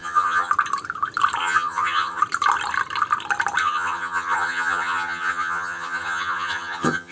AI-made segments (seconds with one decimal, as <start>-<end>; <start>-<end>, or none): 0.0-0.5; 1.4-2.2; 3.6-7.1